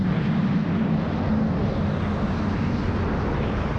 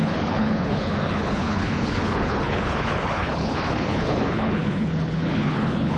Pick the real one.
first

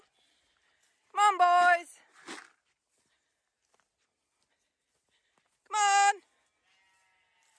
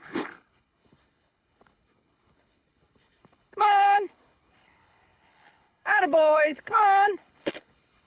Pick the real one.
first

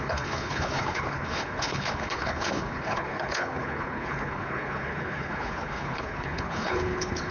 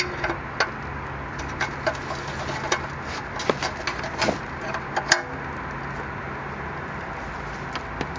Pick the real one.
second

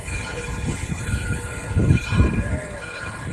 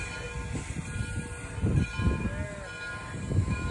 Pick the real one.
second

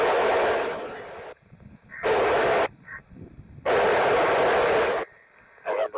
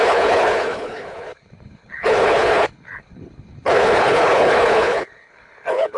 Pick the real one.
first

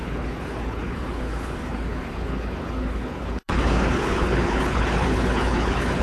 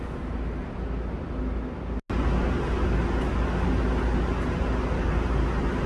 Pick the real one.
second